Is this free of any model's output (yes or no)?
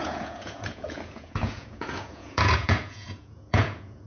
no